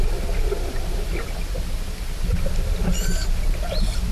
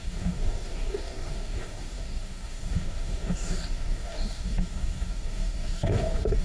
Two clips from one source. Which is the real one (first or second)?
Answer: first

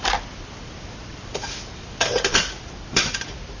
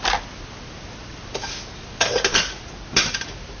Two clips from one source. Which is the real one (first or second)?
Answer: second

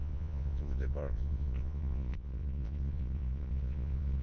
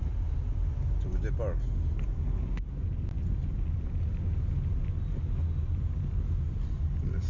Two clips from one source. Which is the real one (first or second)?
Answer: second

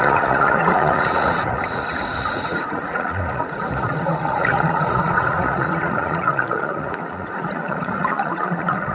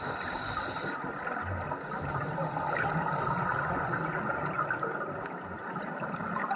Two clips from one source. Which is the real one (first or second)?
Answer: second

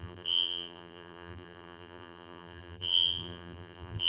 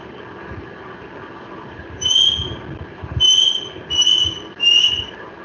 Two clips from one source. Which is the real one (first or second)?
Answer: second